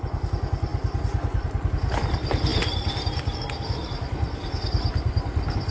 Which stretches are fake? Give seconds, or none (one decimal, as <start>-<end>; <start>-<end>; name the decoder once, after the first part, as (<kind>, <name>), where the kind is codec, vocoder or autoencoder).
none